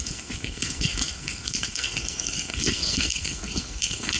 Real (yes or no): no